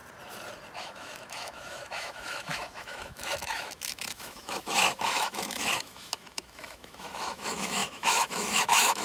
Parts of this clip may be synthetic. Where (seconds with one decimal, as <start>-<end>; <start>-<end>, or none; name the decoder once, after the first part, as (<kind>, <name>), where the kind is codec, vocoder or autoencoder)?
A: 0.8-9.0 (autoencoder, DAC-VAE)